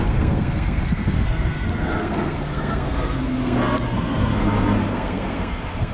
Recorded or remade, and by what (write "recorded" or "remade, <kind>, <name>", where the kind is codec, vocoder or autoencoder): remade, codec, SNAC